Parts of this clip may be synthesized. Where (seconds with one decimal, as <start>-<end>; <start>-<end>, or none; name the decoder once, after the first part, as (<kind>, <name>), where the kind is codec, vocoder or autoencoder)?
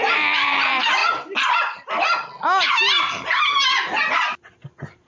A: 0.0-1.0 (vocoder, BigVGAN v2); 4.1-5.1